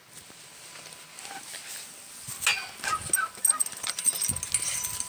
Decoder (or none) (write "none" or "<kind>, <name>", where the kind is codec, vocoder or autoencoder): none